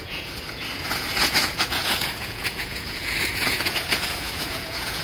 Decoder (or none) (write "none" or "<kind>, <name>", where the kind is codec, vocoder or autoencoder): vocoder, Vocos